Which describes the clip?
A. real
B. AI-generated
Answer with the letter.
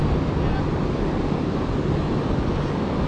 A